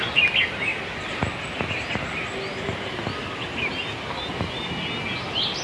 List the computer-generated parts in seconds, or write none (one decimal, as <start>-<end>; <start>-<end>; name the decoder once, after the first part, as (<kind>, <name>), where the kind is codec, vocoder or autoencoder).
none